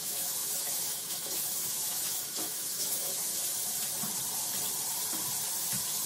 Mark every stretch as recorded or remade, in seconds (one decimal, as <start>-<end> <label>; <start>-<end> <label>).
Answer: 0.0-3.3 remade; 3.3-6.1 recorded